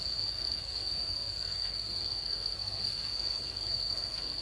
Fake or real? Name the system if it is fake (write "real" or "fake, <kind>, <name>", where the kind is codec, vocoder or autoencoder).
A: fake, codec, SNAC